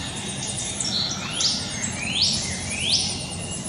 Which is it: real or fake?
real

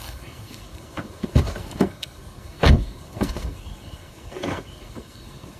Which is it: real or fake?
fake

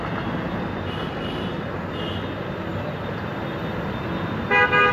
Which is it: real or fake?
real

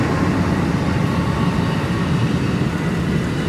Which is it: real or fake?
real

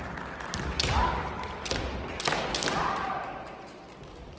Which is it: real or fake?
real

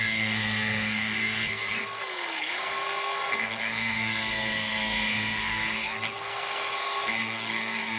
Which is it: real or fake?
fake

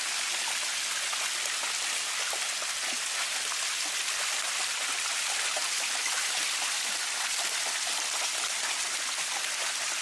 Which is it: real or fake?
real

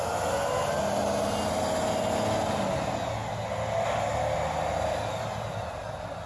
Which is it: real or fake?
real